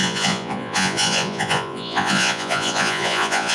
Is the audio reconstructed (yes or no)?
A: yes